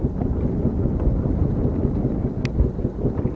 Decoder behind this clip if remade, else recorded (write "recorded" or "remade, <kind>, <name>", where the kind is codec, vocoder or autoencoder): recorded